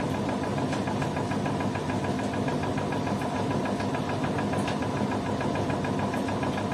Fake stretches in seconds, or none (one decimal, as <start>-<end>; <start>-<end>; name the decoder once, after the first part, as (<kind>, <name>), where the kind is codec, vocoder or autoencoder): none